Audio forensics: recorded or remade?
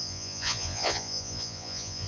remade